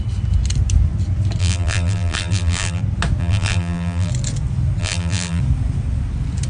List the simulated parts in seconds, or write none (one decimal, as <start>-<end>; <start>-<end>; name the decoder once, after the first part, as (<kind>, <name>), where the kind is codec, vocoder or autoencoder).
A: 1.4-2.8 (vocoder, BigVGAN v2); 3.2-4.1; 4.8-5.4